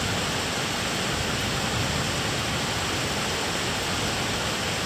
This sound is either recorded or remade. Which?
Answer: recorded